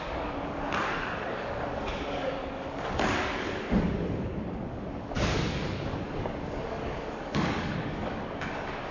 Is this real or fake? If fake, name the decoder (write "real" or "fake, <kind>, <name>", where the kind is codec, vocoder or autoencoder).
fake, codec, DAC